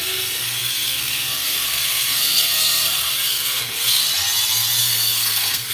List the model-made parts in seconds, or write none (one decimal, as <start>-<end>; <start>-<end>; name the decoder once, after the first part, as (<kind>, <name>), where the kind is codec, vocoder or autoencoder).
0.0-4.0 (codec, SNAC); 4.8-5.7